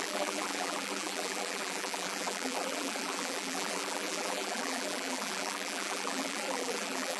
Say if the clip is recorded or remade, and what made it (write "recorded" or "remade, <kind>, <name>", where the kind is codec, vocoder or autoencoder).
remade, vocoder, BigVGAN v2